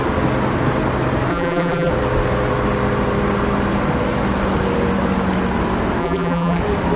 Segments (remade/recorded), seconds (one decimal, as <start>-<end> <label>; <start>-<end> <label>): 0.0-1.3 recorded; 1.3-1.9 remade; 1.9-6.0 recorded; 6.0-6.6 remade; 6.6-7.0 recorded